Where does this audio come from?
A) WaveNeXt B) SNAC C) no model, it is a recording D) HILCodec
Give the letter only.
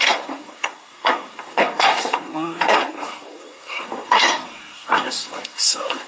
B